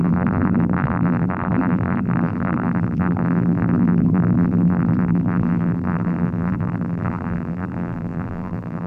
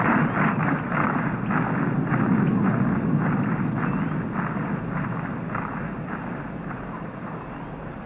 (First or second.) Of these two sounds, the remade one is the first